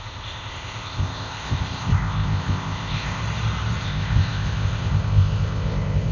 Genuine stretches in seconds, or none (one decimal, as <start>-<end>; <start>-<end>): 3.2-3.8